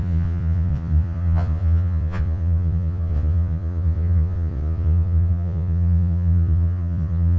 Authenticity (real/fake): fake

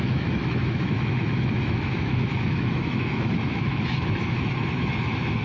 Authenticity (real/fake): fake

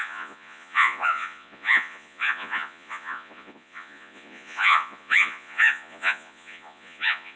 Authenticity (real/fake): fake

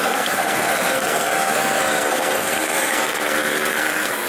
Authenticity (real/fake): fake